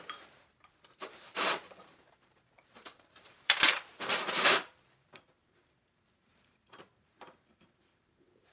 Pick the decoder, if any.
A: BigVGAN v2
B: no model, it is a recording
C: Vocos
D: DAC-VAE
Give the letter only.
A